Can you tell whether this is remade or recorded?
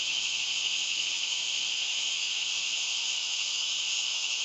remade